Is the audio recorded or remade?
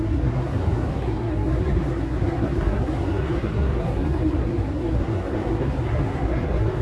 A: remade